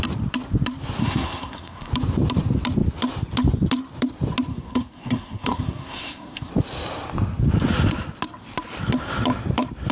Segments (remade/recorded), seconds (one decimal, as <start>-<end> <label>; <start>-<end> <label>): 0.0-1.0 recorded; 1.0-1.9 remade; 1.9-4.5 recorded; 4.5-6.5 remade; 6.5-9.9 recorded